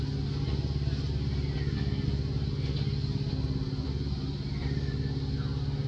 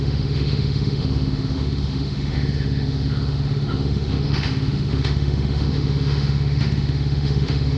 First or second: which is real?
first